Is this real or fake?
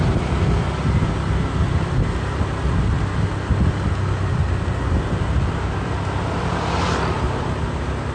real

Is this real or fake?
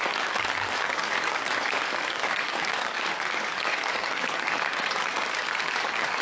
fake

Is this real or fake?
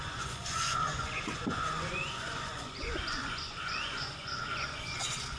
fake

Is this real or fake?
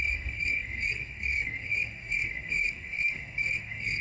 fake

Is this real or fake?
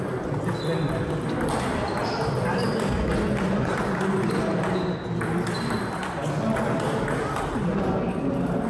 real